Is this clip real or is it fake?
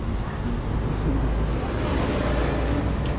real